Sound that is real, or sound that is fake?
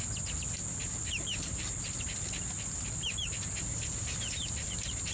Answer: real